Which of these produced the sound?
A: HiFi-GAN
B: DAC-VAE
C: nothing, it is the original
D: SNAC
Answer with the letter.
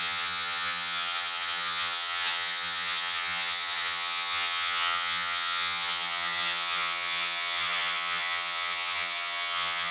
A